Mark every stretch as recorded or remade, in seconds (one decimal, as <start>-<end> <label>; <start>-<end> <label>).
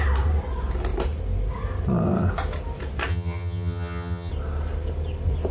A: 0.0-3.1 recorded; 3.1-4.3 remade; 4.3-5.5 recorded